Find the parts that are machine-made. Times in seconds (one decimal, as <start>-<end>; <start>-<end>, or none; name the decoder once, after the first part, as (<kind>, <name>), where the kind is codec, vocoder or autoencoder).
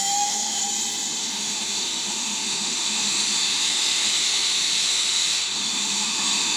0.0-0.6 (autoencoder, DAC-VAE); 1.2-6.6